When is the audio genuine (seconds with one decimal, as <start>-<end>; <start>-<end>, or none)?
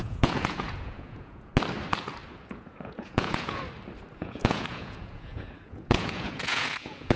1.5-2.5; 3.6-4.2